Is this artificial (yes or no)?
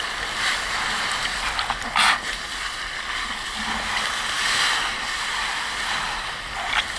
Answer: no